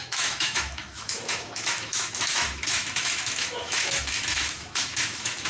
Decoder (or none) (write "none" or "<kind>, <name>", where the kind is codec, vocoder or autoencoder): autoencoder, DAC-VAE